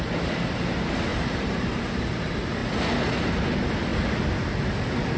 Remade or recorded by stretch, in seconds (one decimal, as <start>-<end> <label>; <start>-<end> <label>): 0.0-1.1 recorded; 1.1-2.0 remade; 2.0-5.2 recorded